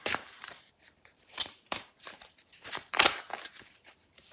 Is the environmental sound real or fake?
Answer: fake